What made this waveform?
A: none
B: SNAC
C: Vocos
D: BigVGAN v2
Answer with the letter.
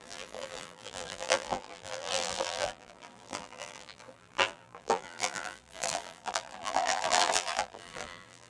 D